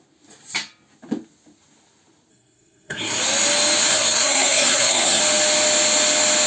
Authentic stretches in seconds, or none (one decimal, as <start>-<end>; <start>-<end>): 0.0-2.3; 3.2-3.9; 5.2-6.5